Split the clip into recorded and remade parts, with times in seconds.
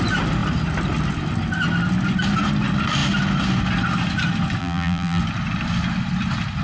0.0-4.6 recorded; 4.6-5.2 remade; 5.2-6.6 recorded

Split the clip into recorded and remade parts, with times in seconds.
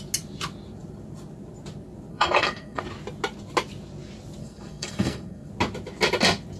0.0-2.1 recorded; 2.1-2.8 remade; 2.8-4.4 recorded; 4.4-5.5 remade; 5.5-6.6 recorded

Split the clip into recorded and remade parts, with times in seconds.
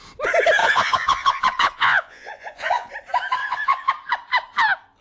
0.0-0.6 recorded; 0.6-2.9 remade; 2.9-3.4 recorded; 3.4-3.9 remade; 3.9-5.0 recorded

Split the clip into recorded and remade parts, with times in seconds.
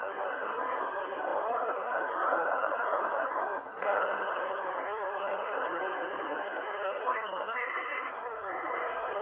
0.0-9.2 remade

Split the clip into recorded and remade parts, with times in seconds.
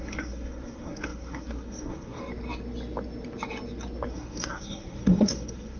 0.0-2.2 remade; 2.2-4.1 recorded; 4.1-5.8 remade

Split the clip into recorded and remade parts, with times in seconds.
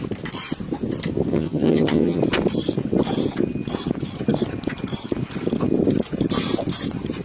0.0-1.3 recorded; 1.3-2.2 remade; 2.2-7.2 recorded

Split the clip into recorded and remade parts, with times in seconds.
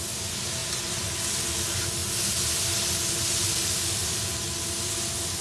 0.0-5.4 recorded